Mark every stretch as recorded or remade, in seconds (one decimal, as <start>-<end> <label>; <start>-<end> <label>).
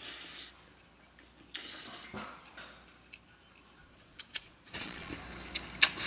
0.0-3.8 recorded; 3.8-5.1 remade; 5.1-6.1 recorded